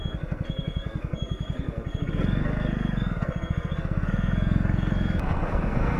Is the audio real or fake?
fake